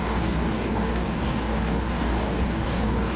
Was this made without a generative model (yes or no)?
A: no